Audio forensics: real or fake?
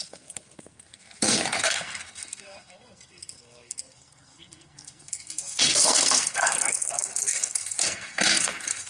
fake